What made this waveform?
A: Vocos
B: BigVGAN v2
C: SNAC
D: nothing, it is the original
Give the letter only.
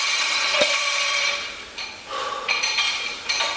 B